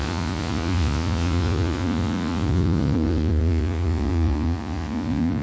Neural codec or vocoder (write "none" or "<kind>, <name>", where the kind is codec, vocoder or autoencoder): vocoder, Vocos